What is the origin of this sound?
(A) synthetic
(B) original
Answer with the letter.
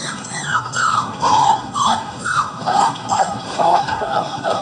A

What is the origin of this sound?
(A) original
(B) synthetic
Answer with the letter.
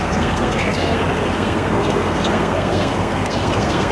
B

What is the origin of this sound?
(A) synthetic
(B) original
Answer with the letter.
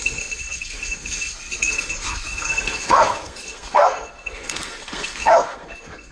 A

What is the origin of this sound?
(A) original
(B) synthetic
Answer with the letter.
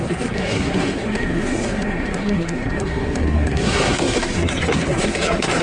B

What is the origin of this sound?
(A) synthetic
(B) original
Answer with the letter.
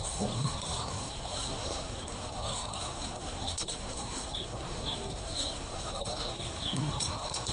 A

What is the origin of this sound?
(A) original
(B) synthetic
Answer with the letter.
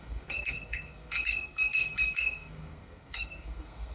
B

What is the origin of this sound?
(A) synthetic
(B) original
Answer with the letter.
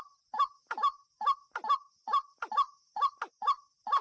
B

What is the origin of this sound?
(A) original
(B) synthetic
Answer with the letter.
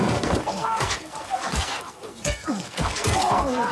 B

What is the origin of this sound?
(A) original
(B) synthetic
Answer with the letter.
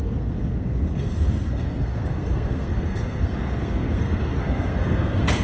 B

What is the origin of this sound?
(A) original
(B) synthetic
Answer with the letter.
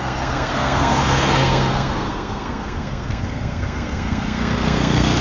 B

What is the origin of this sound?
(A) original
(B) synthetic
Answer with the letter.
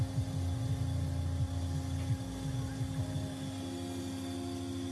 A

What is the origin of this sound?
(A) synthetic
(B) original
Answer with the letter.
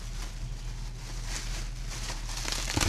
B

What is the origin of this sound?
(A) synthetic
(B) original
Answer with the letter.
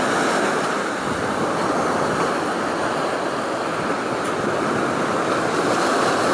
B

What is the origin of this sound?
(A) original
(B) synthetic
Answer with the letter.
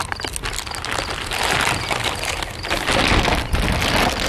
A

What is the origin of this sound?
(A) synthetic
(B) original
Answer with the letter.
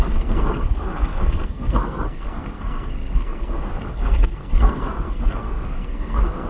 A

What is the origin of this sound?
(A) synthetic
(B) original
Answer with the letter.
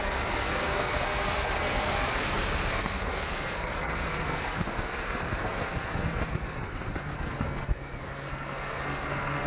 A